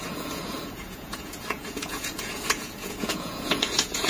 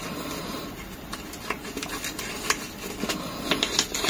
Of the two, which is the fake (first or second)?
first